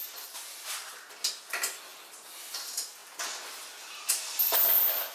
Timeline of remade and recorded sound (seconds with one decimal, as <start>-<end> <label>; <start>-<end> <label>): 0.0-5.1 recorded